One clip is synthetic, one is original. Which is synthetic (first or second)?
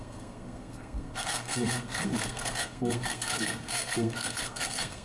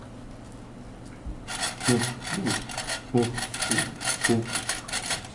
first